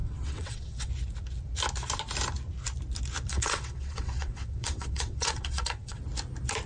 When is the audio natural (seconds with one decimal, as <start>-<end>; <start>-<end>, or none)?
0.9-3.3; 6.0-6.7